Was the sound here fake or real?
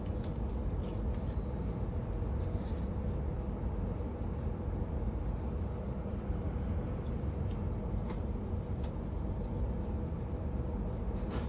real